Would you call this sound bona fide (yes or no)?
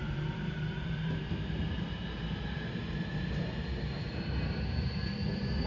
no